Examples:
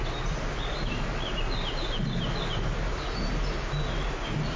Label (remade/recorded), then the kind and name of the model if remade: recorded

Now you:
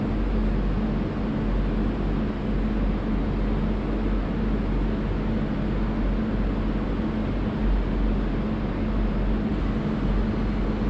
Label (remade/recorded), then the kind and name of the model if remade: recorded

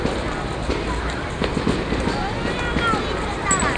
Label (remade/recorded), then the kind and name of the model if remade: recorded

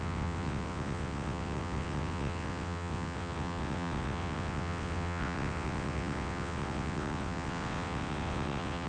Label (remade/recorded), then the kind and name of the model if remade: remade, vocoder, WaveNeXt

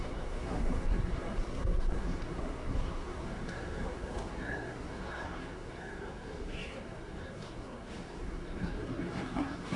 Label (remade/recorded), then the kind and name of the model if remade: remade, codec, SNAC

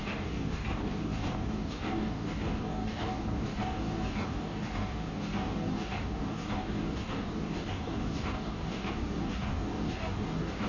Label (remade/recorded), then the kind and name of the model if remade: remade, codec, DAC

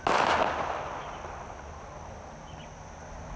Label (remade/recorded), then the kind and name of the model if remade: recorded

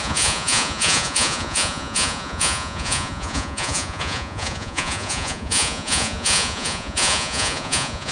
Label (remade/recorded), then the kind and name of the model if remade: remade, vocoder, Vocos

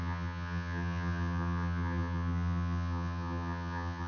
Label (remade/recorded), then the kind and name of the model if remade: remade, vocoder, HiFi-GAN